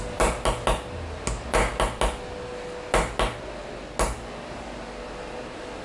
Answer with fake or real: real